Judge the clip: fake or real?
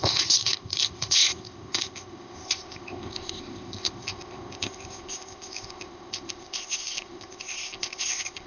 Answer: fake